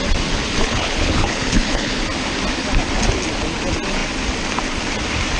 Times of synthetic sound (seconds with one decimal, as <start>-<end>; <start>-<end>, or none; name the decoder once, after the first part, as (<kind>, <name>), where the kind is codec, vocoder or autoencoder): 0.6-2.0 (codec, HILCodec)